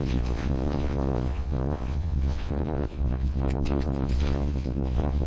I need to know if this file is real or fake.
fake